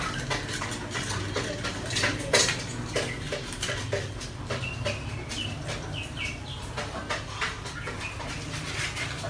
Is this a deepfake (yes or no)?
no